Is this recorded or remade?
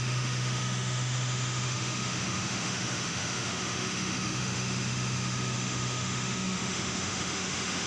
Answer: remade